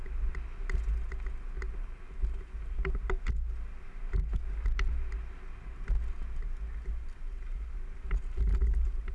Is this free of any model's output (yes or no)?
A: yes